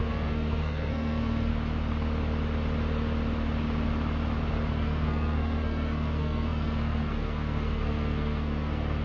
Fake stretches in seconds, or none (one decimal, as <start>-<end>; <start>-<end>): 0.0-1.5; 4.7-9.0